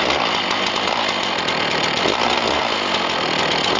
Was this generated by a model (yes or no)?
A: no